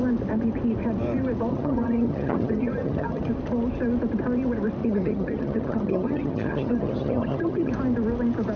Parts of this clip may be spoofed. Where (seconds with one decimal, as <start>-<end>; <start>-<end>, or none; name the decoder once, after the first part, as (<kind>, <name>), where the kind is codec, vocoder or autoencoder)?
1.5-3.3 (vocoder, HiFi-GAN); 4.8-7.7